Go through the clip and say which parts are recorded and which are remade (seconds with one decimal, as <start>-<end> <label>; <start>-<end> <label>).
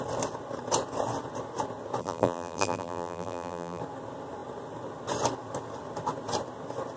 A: 0.0-2.0 recorded; 2.0-3.8 remade; 3.8-7.0 recorded